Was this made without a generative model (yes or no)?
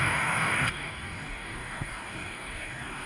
no